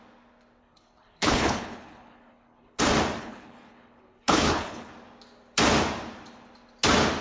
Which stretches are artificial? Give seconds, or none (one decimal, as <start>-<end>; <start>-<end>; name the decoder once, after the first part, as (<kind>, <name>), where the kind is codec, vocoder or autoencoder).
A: 0.6-2.8 (codec, HILCodec); 3.2-4.9

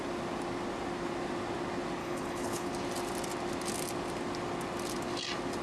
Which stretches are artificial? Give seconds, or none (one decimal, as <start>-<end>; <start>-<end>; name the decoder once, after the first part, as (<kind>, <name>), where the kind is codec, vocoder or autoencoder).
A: 2.0-2.7 (codec, HILCodec)

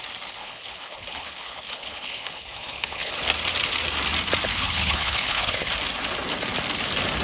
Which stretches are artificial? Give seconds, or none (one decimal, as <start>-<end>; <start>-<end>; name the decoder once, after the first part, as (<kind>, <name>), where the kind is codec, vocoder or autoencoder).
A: 0.4-3.1 (codec, HILCodec); 4.5-5.7

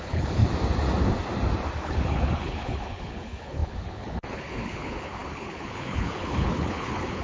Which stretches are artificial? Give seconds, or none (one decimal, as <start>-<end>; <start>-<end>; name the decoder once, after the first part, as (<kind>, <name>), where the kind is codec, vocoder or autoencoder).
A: 0.0-0.4 (codec, HILCodec); 1.8-7.2